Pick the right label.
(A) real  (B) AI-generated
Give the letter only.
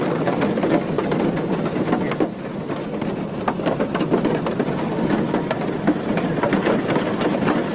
A